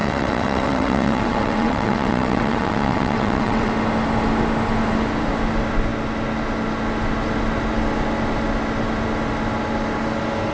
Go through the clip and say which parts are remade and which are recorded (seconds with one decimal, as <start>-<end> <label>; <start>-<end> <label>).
0.0-3.7 remade; 3.7-10.5 recorded